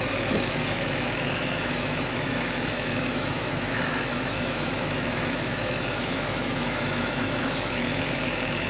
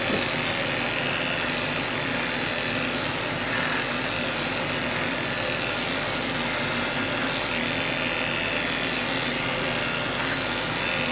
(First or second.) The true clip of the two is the second